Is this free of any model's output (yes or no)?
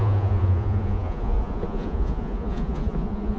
no